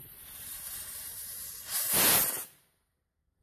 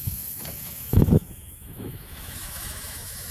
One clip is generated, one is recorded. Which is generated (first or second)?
second